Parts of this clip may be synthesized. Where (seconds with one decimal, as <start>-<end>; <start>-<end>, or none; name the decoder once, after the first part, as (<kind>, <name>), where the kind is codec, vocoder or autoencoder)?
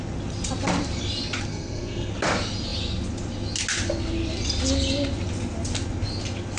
1.5-2.1 (codec, SNAC)